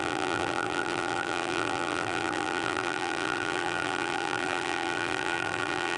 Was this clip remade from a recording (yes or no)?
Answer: yes